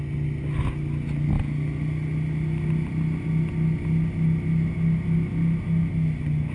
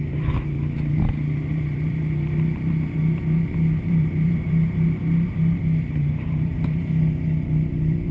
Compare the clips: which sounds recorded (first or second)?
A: first